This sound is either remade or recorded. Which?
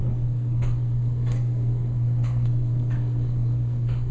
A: remade